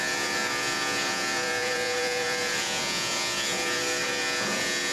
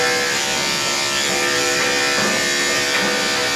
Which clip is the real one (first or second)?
second